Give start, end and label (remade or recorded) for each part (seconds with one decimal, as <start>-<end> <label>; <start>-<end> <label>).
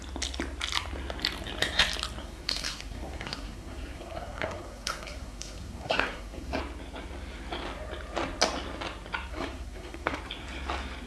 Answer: 0.0-2.2 recorded; 2.2-6.6 remade; 6.6-9.3 recorded; 9.3-10.2 remade; 10.2-11.1 recorded